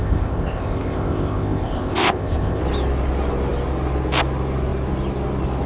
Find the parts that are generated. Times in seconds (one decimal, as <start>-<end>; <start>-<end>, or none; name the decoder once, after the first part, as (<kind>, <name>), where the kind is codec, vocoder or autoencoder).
0.0-2.6 (codec, ZipCodec)